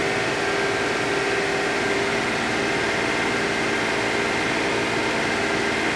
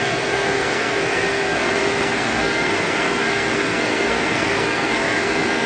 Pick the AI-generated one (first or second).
second